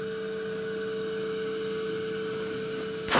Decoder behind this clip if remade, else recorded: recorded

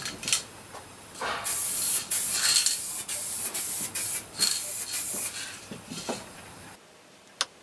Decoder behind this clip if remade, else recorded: recorded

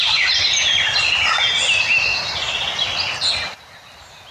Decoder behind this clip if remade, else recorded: recorded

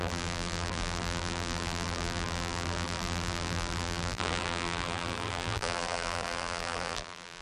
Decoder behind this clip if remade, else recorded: remade, vocoder, BigVGAN v2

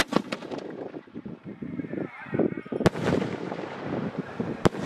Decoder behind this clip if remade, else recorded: recorded